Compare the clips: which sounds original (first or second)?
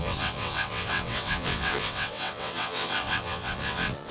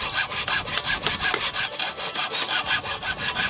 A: second